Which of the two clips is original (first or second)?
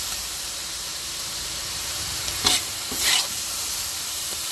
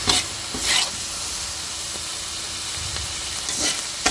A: second